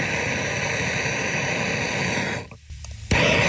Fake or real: real